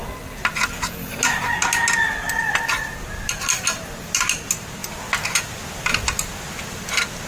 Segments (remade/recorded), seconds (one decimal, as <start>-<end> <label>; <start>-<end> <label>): 0.0-7.3 recorded